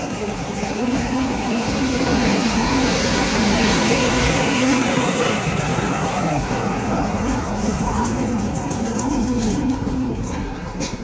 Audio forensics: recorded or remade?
remade